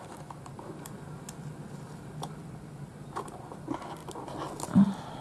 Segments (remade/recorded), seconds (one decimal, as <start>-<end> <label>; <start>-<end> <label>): 0.0-5.2 recorded